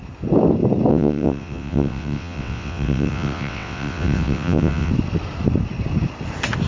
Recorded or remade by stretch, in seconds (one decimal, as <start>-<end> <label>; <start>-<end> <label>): 0.0-0.9 recorded; 0.9-4.9 remade; 4.9-6.7 recorded